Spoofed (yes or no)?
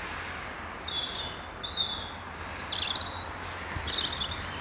no